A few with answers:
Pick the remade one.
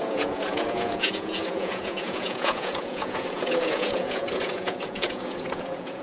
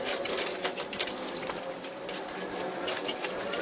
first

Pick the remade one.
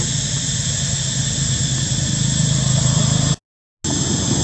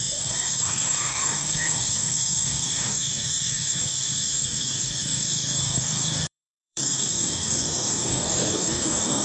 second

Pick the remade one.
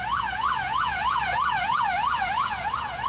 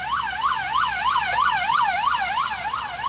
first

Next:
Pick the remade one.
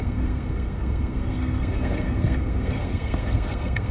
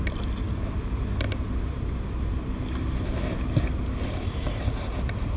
first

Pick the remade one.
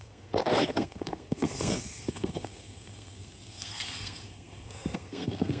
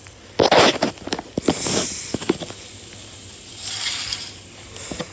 first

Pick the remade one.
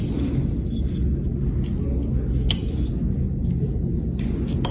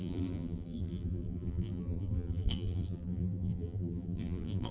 second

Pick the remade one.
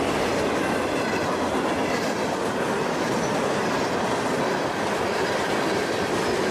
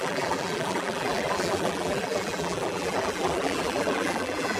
second